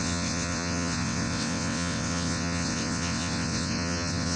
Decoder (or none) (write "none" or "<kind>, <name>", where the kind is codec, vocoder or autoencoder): vocoder, WaveNeXt